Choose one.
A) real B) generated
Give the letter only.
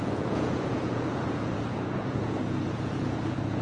B